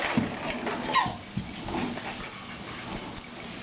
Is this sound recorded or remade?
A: recorded